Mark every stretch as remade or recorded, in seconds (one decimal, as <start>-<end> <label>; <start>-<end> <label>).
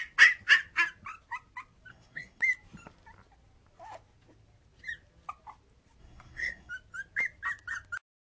0.0-1.9 recorded; 1.9-2.4 remade; 2.4-6.0 recorded; 6.0-6.7 remade; 6.7-8.3 recorded